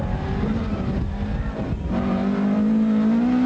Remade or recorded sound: recorded